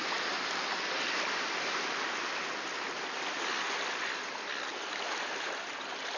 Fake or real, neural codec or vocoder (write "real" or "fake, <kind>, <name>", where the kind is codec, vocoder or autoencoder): real